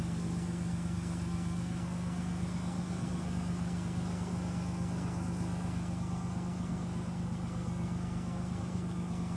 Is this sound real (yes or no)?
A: no